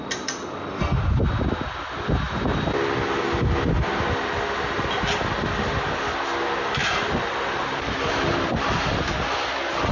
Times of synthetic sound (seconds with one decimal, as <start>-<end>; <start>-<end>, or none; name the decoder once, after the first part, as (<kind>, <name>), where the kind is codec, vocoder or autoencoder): 6.8-8.5 (vocoder, BigVGAN v2)

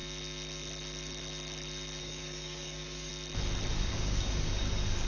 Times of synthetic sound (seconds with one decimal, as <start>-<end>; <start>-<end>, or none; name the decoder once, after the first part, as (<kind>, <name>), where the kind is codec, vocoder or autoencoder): 2.0-3.1 (codec, DAC); 3.7-5.1

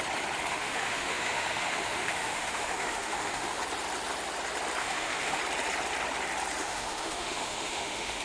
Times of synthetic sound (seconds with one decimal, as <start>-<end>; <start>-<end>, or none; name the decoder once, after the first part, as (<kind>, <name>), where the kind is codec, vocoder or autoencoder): 0.5-3.6 (autoencoder, DAC-VAE); 4.8-5.4; 6.6-8.2

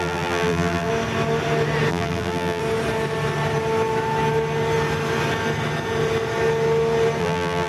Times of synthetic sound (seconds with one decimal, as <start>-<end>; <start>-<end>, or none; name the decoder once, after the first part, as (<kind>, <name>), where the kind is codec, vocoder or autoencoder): 0.0-0.9 (vocoder, BigVGAN v2); 1.9-2.6; 7.2-7.7

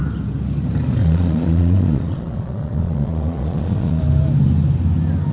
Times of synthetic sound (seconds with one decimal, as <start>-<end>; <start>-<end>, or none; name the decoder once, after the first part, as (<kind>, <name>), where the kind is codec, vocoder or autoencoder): 1.0-4.0 (vocoder, Vocos)

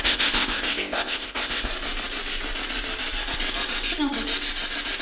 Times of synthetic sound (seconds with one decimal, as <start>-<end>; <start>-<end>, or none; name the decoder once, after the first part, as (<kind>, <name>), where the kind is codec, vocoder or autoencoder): 0.0-1.7 (codec, ZipCodec)

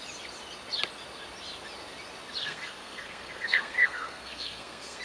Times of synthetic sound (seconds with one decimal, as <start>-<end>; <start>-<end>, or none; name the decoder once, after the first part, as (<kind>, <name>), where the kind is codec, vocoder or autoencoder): 2.4-5.0 (codec, SNAC)

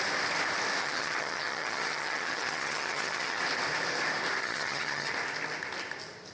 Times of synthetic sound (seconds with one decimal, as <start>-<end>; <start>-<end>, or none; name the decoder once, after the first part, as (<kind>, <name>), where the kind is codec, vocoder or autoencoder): 0.8-3.4 (vocoder, HiFi-GAN); 4.4-5.1